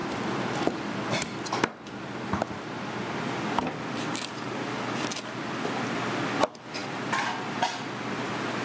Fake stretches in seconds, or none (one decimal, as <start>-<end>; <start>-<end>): none